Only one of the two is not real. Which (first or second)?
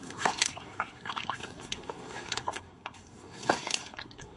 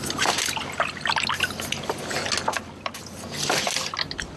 first